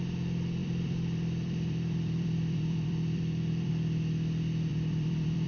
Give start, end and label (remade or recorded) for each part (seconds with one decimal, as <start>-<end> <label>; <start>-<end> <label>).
0.0-0.6 recorded; 0.6-3.7 remade; 3.7-4.7 recorded; 4.7-5.5 remade